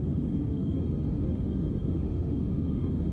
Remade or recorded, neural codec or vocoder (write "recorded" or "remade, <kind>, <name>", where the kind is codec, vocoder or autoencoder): remade, autoencoder, DAC-VAE